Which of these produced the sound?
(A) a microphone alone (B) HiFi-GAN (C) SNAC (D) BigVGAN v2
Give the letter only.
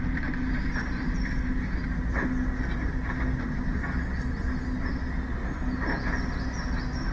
A